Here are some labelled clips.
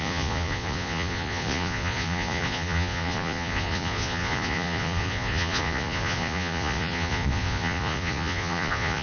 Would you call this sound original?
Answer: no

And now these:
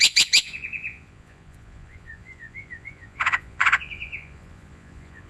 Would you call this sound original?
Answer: no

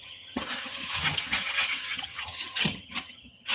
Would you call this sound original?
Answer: no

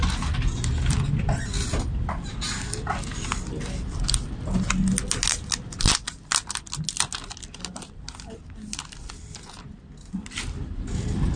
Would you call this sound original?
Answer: yes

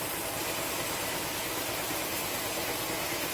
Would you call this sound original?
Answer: yes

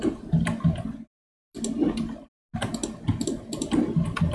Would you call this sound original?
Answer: yes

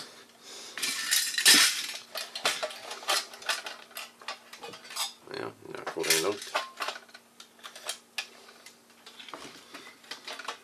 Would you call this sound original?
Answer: yes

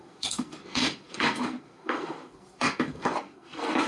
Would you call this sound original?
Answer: no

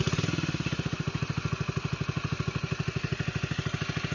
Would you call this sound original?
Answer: yes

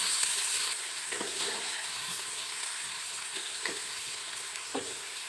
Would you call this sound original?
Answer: no